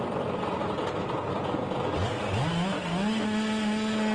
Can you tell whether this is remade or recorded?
recorded